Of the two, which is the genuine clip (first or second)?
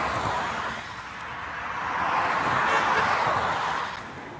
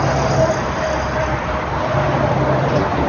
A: first